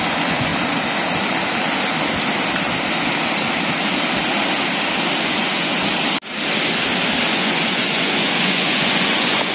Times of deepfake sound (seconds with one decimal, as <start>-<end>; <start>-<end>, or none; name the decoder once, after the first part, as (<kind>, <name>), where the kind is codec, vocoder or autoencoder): 0.0-0.5 (vocoder, Vocos); 5.2-5.8; 7.3-9.5